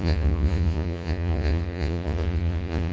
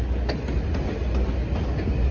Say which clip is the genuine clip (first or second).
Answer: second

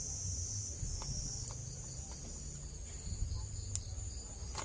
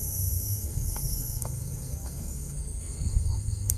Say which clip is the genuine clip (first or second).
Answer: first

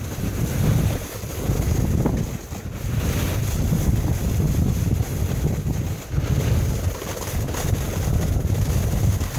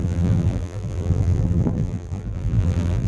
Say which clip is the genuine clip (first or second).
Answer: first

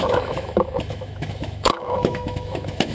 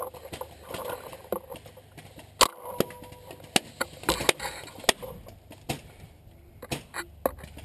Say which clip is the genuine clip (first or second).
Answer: second